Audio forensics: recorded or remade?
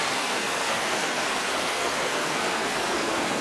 remade